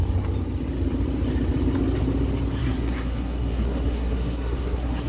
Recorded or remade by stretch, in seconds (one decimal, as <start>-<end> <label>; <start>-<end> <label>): 0.0-2.6 recorded; 2.6-5.1 remade